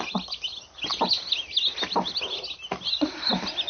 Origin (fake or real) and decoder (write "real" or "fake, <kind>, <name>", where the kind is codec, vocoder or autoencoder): real